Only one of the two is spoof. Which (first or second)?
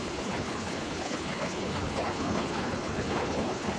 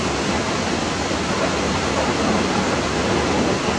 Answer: first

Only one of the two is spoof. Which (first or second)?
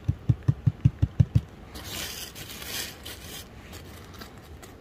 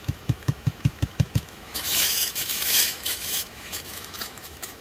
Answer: second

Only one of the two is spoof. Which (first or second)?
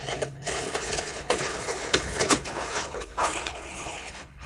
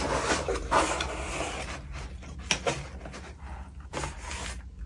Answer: first